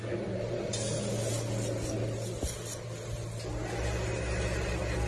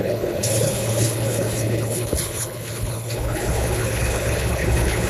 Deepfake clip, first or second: second